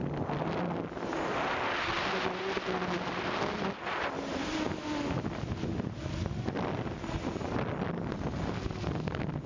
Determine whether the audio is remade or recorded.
recorded